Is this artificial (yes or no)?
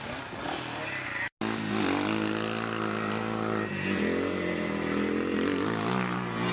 no